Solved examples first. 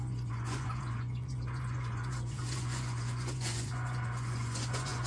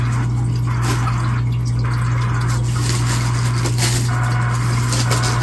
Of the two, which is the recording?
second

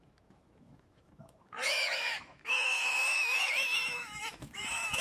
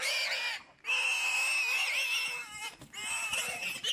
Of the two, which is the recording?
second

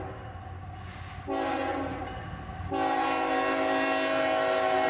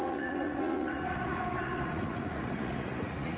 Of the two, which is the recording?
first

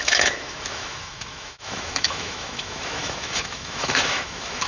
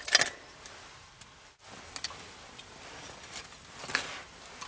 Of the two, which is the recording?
second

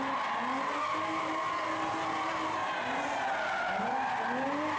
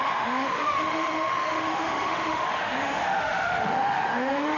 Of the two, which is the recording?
first